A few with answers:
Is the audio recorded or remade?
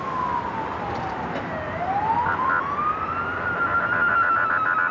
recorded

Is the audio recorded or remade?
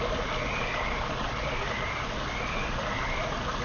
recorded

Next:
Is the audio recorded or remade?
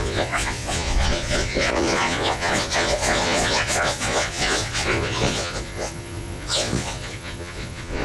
remade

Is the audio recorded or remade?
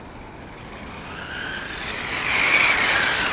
recorded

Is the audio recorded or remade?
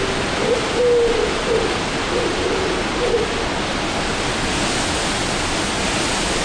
recorded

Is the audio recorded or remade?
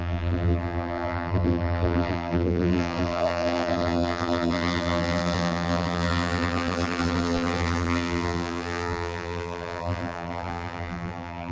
remade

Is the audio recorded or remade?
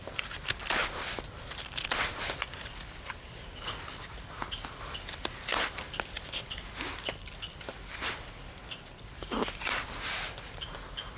recorded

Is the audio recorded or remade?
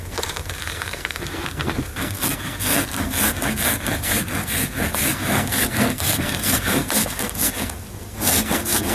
remade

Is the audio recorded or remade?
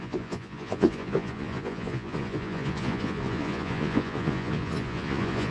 remade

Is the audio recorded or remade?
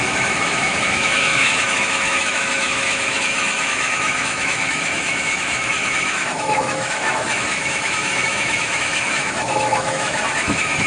remade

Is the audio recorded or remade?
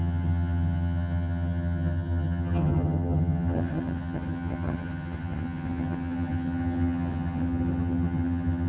remade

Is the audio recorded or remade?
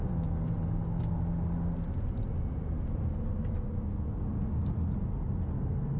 recorded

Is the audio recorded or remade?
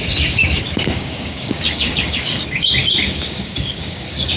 remade